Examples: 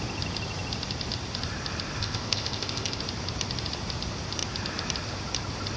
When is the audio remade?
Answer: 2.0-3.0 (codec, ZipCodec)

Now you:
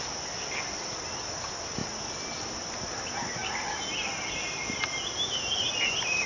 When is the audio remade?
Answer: none